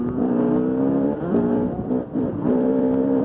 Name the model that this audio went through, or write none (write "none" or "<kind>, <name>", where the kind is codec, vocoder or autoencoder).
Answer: vocoder, BigVGAN v2